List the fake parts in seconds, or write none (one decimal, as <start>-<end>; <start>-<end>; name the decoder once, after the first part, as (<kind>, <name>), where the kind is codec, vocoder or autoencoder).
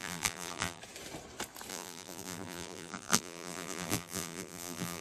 0.0-0.8 (vocoder, BigVGAN v2); 1.7-5.0